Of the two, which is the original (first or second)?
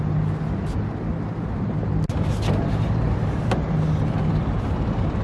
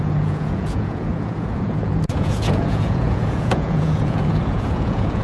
first